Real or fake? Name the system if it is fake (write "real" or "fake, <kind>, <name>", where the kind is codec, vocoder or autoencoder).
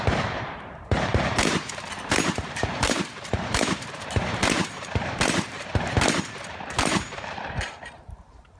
fake, vocoder, BigVGAN v2